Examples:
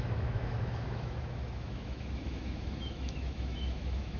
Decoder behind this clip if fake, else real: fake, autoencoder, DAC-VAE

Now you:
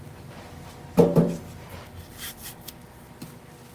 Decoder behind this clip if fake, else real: real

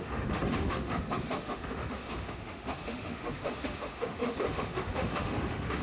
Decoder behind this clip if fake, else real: fake, autoencoder, DAC-VAE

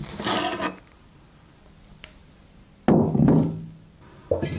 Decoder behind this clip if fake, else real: real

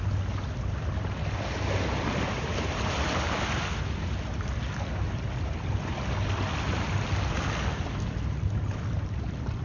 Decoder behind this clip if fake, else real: real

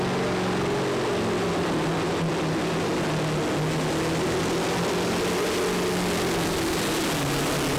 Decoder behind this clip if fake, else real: real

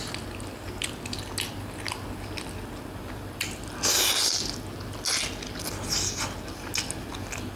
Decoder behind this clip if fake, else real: real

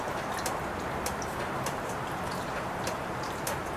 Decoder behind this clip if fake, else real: real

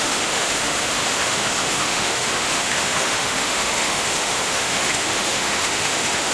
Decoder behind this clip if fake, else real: fake, autoencoder, DAC-VAE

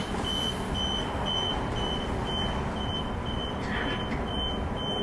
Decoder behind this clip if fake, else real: real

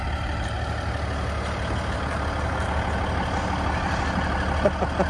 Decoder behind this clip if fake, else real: real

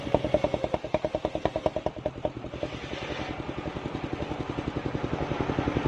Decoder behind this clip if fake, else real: real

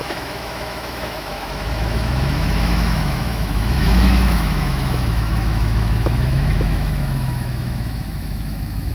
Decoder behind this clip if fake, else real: fake, autoencoder, DAC-VAE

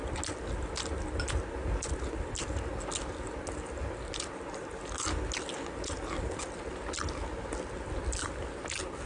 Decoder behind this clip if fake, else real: real